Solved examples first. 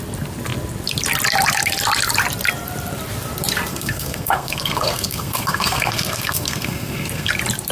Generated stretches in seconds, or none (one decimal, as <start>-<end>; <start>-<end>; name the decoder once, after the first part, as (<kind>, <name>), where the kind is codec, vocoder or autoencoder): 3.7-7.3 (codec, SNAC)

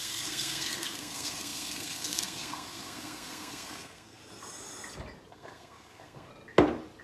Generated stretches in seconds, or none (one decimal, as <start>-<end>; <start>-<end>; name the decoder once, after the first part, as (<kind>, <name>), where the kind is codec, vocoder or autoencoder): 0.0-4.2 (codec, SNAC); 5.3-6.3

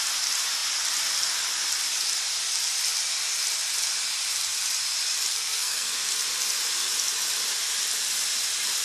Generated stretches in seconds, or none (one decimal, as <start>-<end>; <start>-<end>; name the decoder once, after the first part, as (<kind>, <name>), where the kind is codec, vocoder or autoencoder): 5.3-6.1 (codec, SNAC)

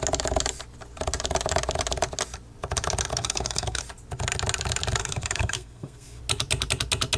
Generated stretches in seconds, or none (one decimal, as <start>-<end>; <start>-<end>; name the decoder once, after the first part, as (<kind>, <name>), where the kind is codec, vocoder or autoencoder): 3.1-3.8 (codec, SNAC); 5.0-6.2

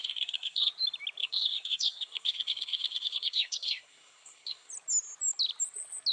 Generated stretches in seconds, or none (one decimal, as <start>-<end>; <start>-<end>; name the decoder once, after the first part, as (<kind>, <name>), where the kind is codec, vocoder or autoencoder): 0.0-0.7 (codec, SNAC); 1.2-4.7